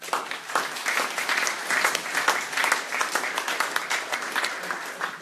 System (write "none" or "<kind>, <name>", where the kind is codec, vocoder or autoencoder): none